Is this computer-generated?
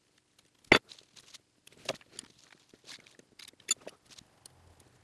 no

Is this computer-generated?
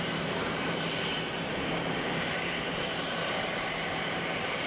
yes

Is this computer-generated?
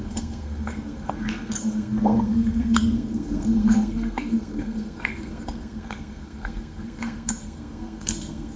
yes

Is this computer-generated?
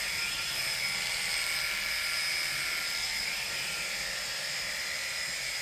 no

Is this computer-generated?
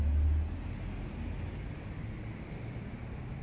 no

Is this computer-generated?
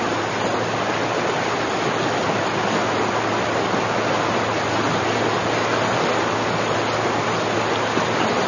no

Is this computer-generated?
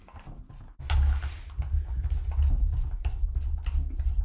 no